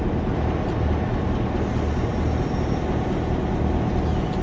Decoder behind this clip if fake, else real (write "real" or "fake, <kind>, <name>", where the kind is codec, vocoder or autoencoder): real